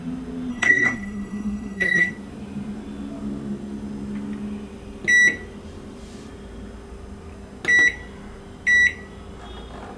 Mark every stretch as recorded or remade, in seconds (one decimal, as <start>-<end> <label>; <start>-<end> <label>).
0.0-0.5 recorded; 0.5-2.1 remade; 2.1-10.0 recorded